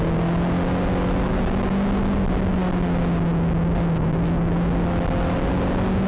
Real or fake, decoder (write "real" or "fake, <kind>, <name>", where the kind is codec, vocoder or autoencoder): real